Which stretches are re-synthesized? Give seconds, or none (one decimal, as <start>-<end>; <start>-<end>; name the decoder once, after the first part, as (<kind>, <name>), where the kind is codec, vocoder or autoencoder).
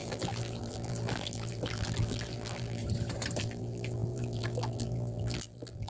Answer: 0.0-2.8 (vocoder, BigVGAN v2); 3.4-5.9